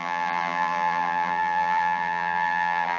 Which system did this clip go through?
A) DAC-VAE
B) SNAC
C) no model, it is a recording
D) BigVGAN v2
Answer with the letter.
D